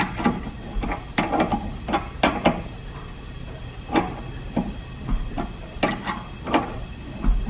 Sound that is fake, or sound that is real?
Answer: real